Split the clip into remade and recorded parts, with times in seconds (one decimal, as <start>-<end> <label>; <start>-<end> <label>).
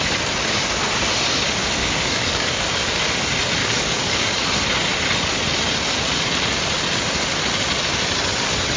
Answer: 0.0-1.8 recorded; 1.8-3.0 remade; 3.0-3.6 recorded; 3.6-4.5 remade; 4.5-8.8 recorded